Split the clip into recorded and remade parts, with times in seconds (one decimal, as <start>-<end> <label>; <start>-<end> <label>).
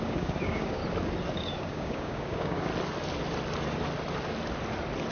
0.0-0.8 remade; 0.8-1.3 recorded; 1.3-2.7 remade; 2.7-5.1 recorded